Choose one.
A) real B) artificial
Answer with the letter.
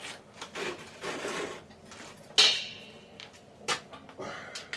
A